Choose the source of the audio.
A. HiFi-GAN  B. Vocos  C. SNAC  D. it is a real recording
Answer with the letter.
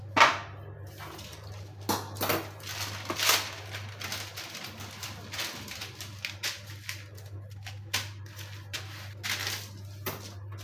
D